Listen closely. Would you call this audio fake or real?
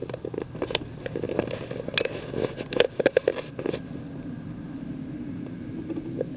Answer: real